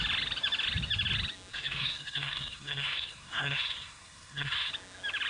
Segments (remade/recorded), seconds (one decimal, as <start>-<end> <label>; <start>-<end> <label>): 0.0-1.5 recorded; 1.5-4.7 remade; 4.7-5.3 recorded